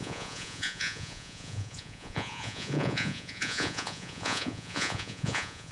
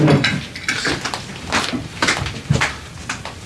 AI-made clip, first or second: first